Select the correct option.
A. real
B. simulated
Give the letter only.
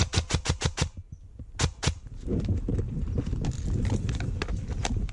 A